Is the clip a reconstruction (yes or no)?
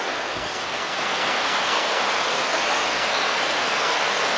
yes